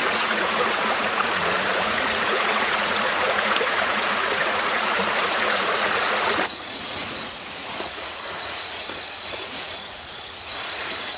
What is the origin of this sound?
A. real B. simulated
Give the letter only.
B